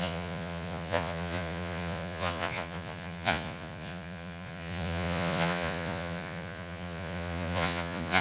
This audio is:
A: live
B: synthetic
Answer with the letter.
B